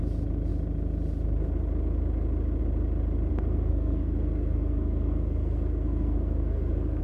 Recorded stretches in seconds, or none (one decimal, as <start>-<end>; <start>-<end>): 0.0-3.3